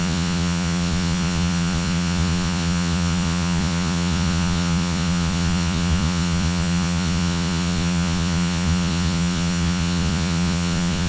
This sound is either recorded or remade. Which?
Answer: remade